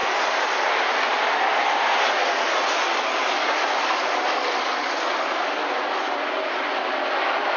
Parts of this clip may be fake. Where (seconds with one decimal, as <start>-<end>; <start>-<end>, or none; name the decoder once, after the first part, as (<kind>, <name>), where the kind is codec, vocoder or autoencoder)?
none